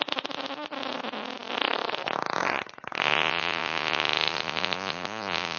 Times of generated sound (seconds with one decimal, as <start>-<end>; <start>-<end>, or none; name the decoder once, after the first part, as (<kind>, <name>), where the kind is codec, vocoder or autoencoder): 2.4-3.0 (vocoder, HiFi-GAN)